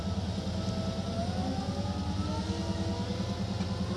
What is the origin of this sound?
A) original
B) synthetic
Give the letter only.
A